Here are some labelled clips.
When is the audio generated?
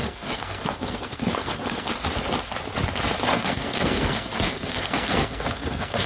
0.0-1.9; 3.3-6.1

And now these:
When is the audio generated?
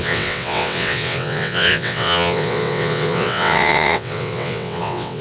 0.0-5.2